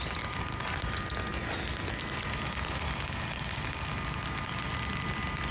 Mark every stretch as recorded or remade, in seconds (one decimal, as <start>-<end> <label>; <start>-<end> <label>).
0.0-5.5 recorded